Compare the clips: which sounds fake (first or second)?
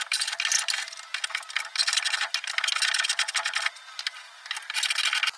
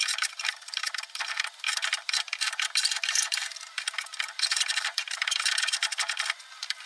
second